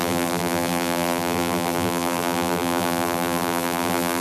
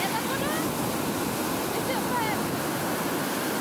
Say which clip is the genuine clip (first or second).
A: second